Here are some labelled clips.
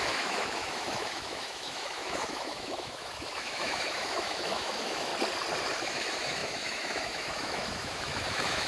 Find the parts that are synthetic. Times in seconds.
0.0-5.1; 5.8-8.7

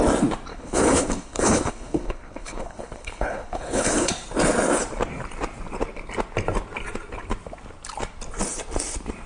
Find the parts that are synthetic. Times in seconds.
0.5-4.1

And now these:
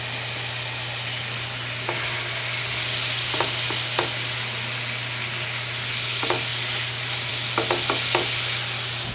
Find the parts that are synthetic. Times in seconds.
6.5-7.3

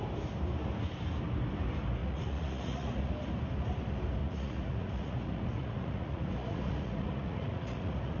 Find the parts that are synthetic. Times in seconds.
2.0-3.1; 4.2-8.2

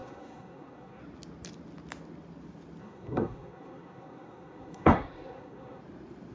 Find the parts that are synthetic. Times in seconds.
0.0-1.0; 2.8-5.8

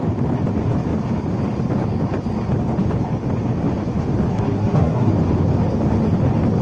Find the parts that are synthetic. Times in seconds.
4.3-5.1

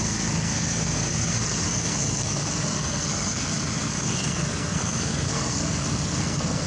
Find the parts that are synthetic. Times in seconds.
0.0-6.7

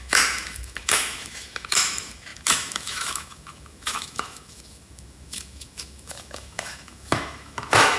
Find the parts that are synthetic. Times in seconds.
0.0-8.0